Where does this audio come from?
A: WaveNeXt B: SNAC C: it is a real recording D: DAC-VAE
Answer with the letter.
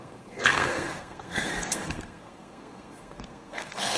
B